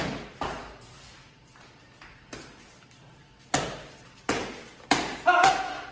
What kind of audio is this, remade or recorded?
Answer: recorded